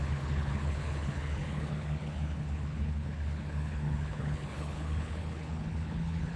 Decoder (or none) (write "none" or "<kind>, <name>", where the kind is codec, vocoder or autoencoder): codec, HILCodec